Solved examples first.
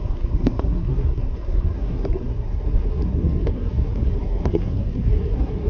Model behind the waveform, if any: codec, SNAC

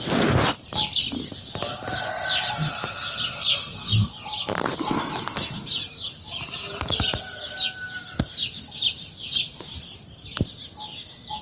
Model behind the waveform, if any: none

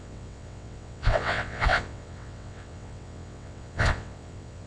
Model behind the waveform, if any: vocoder, WaveNeXt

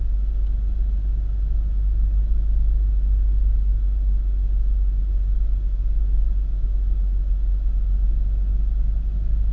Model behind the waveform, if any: none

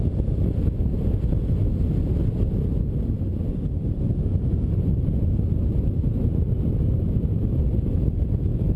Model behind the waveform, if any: none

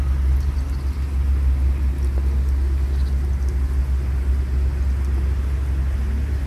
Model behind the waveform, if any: none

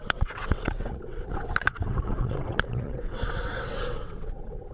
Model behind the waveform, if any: vocoder, WaveNeXt